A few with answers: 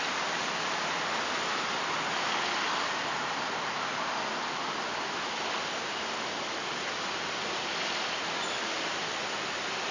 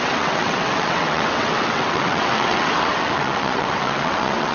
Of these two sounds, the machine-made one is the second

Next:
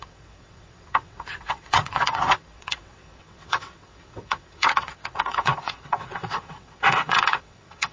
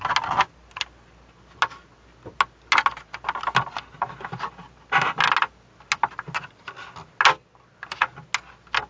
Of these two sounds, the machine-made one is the first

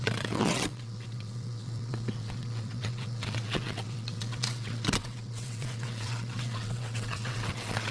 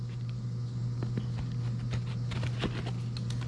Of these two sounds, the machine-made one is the first